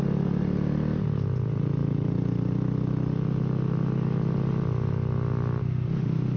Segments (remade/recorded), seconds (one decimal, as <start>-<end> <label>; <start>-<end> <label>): 0.0-6.4 recorded